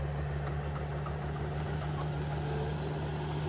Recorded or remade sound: recorded